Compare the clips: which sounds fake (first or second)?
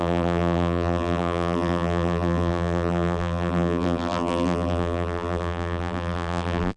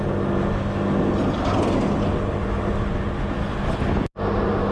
first